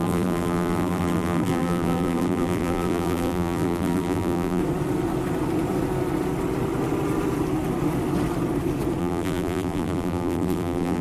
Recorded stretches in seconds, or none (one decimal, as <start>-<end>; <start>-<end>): 4.6-9.0